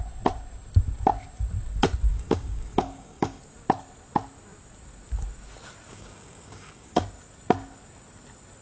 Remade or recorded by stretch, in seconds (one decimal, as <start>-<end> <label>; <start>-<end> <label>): 0.0-2.1 recorded; 2.1-3.4 remade; 3.4-5.9 recorded; 5.9-7.0 remade; 7.0-8.6 recorded